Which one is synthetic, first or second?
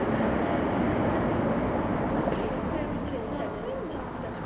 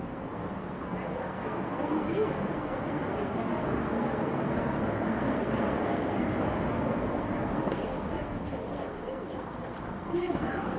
second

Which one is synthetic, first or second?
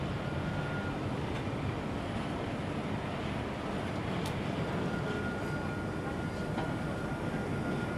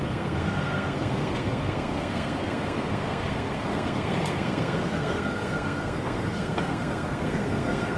second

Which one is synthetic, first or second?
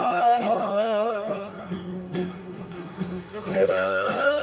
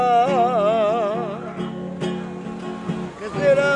first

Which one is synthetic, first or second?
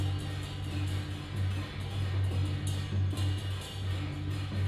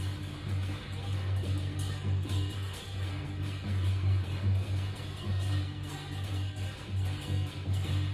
second